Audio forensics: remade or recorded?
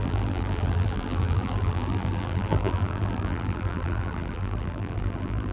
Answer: remade